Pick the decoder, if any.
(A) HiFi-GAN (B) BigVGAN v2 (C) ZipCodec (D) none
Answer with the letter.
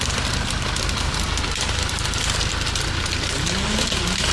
D